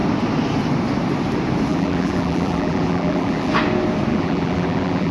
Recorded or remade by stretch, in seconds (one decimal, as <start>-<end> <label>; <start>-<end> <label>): 0.0-1.7 recorded; 1.7-3.5 remade; 3.5-4.1 recorded; 4.1-5.1 remade